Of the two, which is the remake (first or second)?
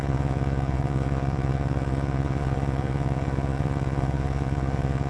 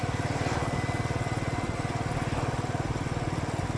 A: first